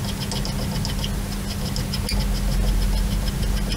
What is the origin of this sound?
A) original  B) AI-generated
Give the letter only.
A